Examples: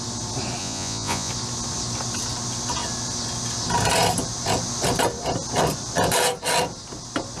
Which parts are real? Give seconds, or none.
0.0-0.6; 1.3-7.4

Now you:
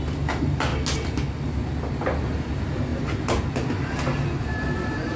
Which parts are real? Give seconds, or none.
0.0-5.2

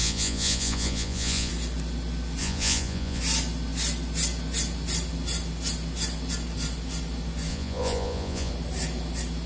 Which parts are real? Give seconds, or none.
1.5-2.4; 3.2-7.5; 8.5-9.5

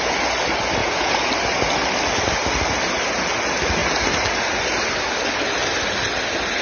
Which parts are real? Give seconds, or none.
0.0-0.8; 1.3-6.6

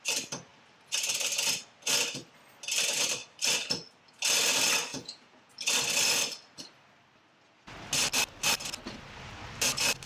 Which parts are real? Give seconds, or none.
0.0-4.9; 5.5-10.1

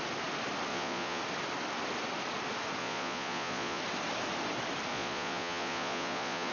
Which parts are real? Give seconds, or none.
0.0-0.7; 1.2-2.8; 3.8-4.9

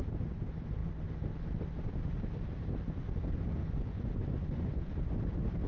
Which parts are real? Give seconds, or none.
0.0-3.6; 4.9-5.7